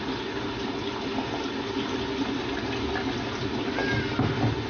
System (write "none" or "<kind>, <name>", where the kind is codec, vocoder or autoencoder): none